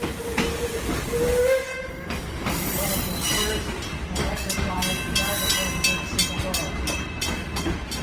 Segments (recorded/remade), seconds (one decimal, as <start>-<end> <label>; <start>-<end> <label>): 0.0-1.7 recorded; 1.7-2.9 remade; 2.9-4.2 recorded; 4.2-4.7 remade; 4.7-8.0 recorded